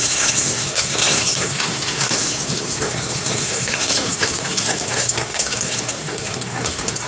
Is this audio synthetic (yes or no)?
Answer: yes